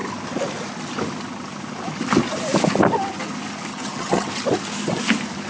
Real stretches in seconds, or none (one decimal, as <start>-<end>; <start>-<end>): 0.0-3.7; 4.3-5.5